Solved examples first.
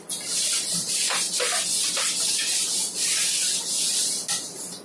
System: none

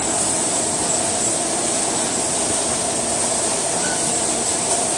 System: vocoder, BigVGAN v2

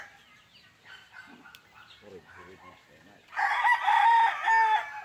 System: none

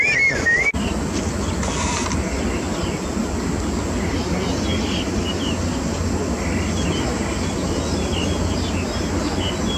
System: none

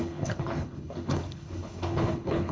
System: codec, HILCodec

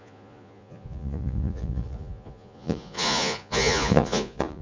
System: vocoder, Vocos